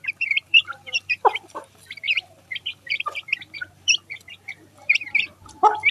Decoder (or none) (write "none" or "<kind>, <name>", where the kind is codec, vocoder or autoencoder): vocoder, BigVGAN v2